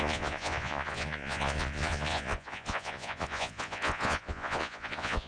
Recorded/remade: remade